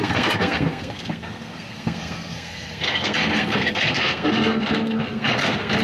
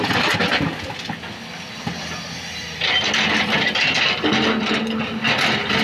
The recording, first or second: second